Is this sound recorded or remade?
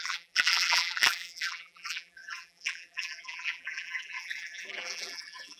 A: remade